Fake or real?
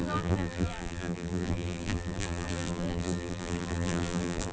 fake